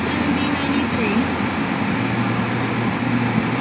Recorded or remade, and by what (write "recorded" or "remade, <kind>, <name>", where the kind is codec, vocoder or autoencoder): recorded